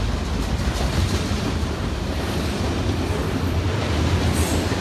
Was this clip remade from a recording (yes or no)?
no